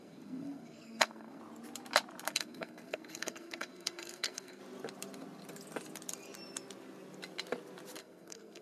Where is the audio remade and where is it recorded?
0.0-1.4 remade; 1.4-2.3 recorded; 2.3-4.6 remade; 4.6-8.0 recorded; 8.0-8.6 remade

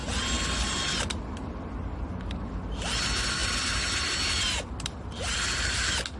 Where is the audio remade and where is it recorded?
0.0-6.2 recorded

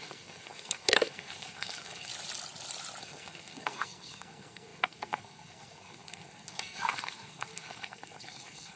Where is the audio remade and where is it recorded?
0.0-2.1 remade; 2.1-3.0 recorded; 3.0-8.8 remade

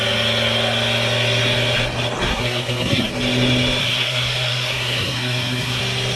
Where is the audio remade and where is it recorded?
0.0-2.3 recorded; 2.3-3.1 remade; 3.1-3.8 recorded; 3.8-5.8 remade; 5.8-6.2 recorded